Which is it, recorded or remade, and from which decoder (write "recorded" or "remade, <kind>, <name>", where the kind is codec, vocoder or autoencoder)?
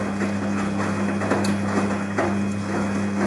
recorded